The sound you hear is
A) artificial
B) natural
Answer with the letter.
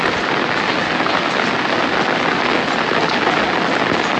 B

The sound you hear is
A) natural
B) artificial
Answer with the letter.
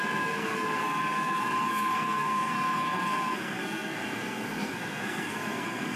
B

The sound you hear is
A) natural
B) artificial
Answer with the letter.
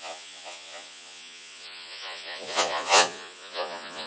B